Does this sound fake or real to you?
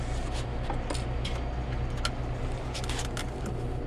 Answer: real